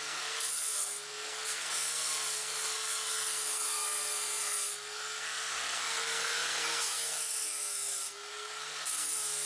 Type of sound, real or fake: fake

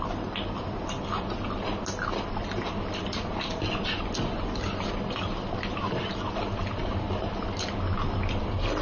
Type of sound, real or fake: real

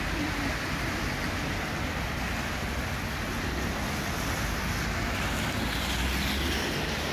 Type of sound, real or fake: real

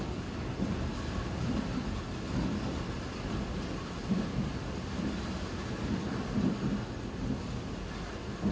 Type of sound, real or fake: real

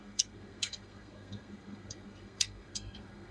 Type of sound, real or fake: fake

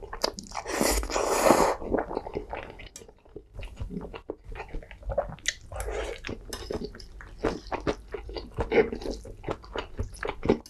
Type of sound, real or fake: real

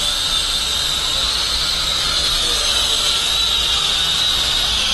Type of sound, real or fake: real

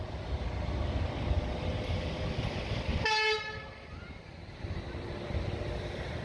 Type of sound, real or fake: real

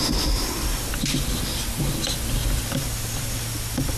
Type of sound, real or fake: real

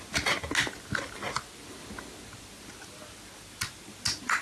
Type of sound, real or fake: real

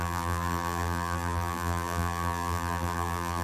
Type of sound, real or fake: fake